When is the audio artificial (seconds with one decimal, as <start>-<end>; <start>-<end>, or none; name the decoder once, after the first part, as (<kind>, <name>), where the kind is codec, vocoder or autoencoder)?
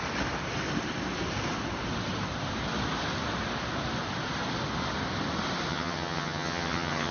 5.7-7.1 (vocoder, HiFi-GAN)